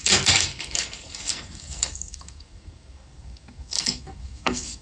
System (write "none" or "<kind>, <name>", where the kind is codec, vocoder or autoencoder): codec, SNAC